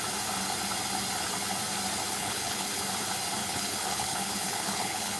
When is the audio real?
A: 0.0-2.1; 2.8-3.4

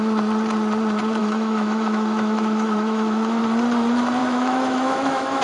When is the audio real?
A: 0.0-1.2; 3.4-4.2

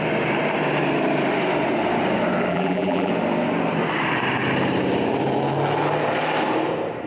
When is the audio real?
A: 0.0-2.5; 3.1-7.1

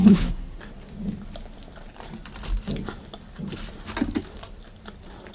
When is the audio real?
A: 0.6-5.3

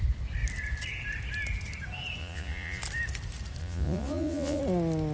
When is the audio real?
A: 0.0-2.2; 2.8-3.6; 4.6-5.1

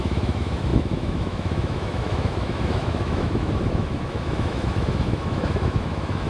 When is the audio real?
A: none

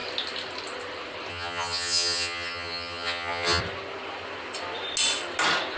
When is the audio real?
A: 0.0-1.3; 3.6-5.8

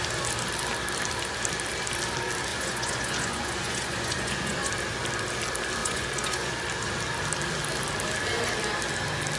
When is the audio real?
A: 0.0-2.5; 4.7-5.8; 6.5-9.4